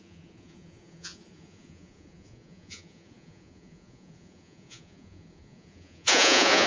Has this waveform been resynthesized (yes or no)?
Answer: yes